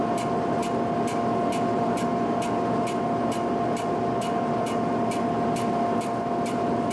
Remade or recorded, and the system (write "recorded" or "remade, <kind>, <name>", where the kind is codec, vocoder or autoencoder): recorded